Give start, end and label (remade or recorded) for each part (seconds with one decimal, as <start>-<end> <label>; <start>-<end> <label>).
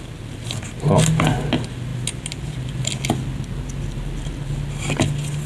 0.0-5.5 recorded